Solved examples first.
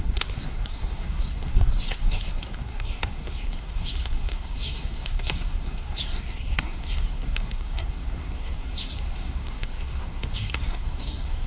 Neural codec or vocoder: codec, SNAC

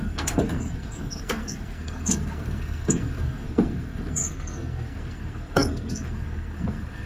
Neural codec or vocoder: codec, SNAC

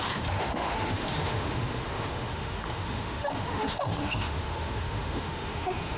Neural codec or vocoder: autoencoder, DAC-VAE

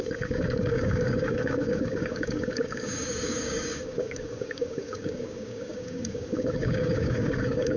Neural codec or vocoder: codec, DAC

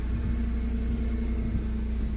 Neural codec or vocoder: none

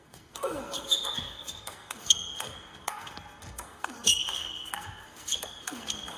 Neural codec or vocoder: codec, SNAC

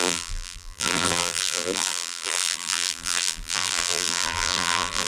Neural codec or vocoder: vocoder, BigVGAN v2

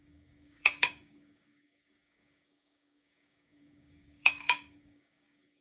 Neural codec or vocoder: codec, DAC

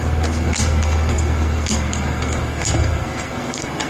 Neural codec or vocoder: codec, SNAC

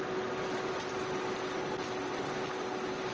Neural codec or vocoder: none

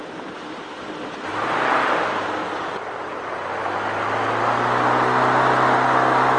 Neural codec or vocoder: none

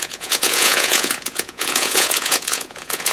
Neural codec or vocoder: vocoder, Vocos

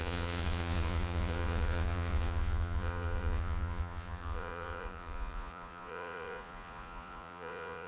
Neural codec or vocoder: vocoder, Vocos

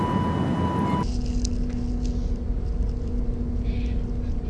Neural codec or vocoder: none